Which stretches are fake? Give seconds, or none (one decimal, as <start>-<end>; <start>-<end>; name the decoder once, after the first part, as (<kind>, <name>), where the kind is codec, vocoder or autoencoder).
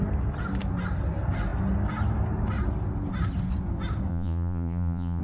4.1-5.2 (vocoder, Vocos)